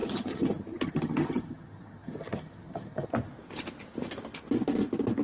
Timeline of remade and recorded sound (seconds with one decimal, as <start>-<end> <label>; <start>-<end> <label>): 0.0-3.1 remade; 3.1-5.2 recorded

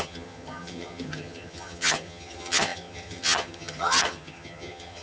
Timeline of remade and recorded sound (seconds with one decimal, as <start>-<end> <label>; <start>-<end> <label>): 0.0-5.0 remade

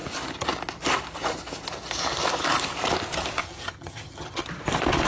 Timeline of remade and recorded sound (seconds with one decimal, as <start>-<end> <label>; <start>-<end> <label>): 0.0-3.4 recorded; 3.4-4.4 remade; 4.4-5.1 recorded